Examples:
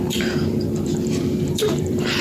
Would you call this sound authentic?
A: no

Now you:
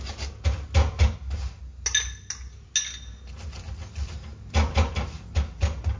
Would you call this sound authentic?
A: yes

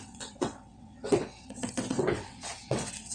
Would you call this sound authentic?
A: no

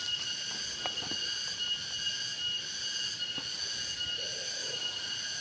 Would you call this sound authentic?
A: yes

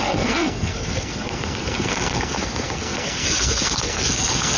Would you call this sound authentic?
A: no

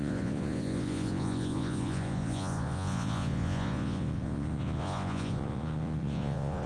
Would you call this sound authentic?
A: no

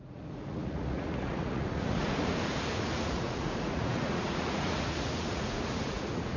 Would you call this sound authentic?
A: no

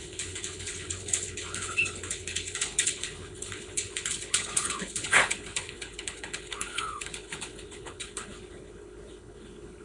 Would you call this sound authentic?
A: no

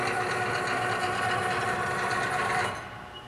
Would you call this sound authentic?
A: yes